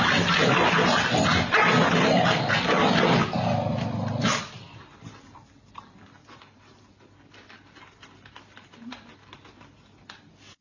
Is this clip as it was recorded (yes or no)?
yes